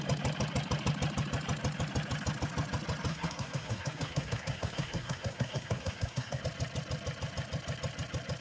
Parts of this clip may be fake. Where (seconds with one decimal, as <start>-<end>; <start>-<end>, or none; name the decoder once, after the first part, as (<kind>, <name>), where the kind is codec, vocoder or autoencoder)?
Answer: 3.1-6.4 (codec, SNAC)